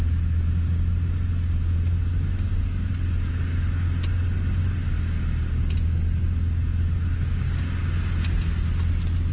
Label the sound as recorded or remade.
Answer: recorded